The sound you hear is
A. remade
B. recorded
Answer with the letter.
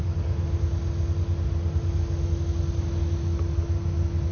B